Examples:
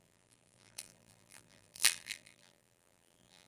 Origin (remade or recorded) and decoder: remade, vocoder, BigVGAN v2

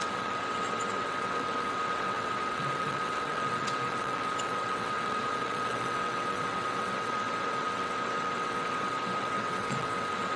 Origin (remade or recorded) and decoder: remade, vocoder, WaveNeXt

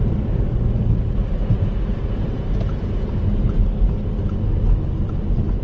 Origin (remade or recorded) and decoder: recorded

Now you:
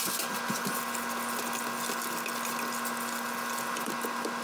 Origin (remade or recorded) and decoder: recorded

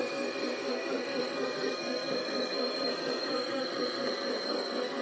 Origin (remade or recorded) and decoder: remade, codec, SNAC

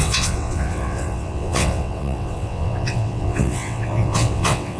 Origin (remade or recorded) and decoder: remade, vocoder, WaveNeXt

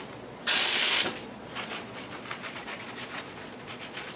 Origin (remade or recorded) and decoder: remade, vocoder, Vocos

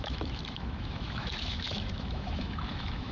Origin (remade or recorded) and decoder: remade, autoencoder, DAC-VAE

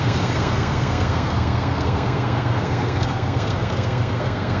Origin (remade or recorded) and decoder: remade, codec, SNAC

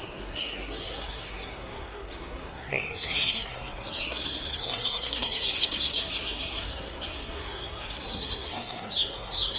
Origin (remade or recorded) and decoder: remade, codec, SNAC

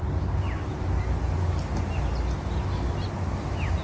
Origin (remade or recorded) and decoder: recorded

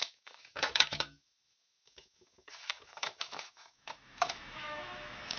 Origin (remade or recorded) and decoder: remade, autoencoder, DAC-VAE